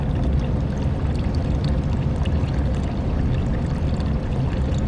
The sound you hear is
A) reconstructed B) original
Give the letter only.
B